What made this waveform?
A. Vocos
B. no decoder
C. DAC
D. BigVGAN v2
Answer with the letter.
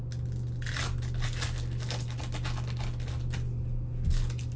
B